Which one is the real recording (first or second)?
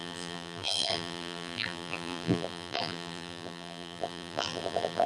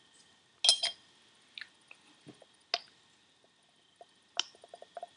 second